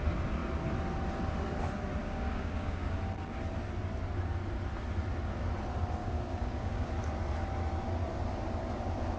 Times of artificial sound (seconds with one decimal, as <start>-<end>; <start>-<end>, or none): 2.0-2.9; 6.0-6.9